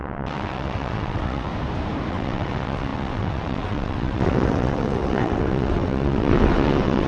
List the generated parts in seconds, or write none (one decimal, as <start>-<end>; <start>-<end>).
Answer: 0.0-1.5; 2.1-7.1